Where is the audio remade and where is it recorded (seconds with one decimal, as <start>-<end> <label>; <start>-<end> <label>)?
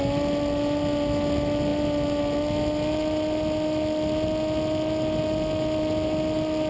0.0-6.7 recorded